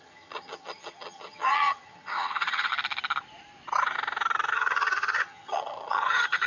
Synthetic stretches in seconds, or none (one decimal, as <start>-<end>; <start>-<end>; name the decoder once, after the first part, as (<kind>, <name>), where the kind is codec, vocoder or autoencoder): 0.0-2.7 (vocoder, HiFi-GAN); 4.5-6.5